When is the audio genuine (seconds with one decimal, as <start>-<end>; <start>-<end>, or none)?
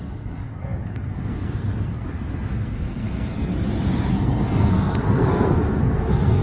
3.5-4.1